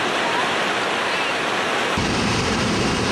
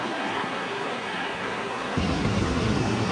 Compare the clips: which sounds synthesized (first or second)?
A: second